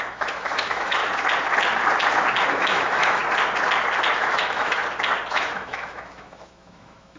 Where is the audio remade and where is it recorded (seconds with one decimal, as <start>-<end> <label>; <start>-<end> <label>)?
0.0-1.0 remade; 1.0-2.5 recorded; 2.5-3.2 remade; 3.2-4.2 recorded; 4.2-4.8 remade; 4.8-5.3 recorded; 5.3-7.2 remade